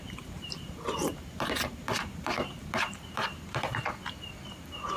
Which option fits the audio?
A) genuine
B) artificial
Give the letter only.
B